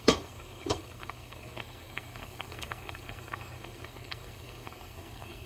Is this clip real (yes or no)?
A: no